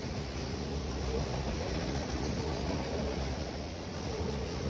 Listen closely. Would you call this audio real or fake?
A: fake